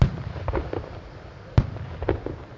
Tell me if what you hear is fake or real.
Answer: real